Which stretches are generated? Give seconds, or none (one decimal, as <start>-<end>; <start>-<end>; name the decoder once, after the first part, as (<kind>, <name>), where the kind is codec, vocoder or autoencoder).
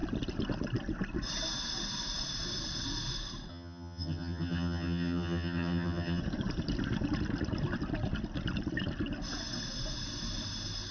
3.5-6.2 (vocoder, HiFi-GAN)